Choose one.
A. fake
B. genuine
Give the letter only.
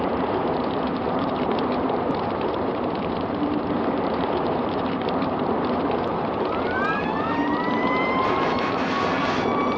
A